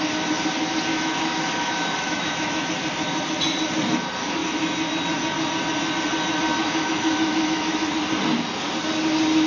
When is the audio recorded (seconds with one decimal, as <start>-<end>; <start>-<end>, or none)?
0.0-0.9; 2.7-6.6; 7.9-9.5